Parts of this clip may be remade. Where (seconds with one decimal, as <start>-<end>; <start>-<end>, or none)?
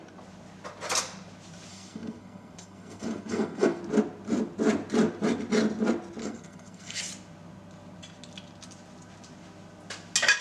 1.7-3.8; 6.2-7.0